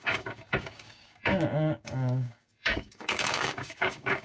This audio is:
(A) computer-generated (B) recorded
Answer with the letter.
A